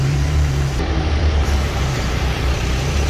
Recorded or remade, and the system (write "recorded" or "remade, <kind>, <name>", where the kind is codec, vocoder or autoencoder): remade, vocoder, BigVGAN v2